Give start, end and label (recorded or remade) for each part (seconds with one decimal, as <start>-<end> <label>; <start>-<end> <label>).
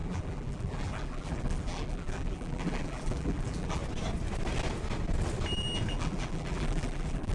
0.0-3.8 remade; 3.8-5.9 recorded; 5.9-7.3 remade